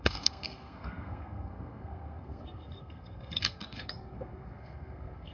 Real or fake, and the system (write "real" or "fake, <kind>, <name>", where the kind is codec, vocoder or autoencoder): fake, codec, SNAC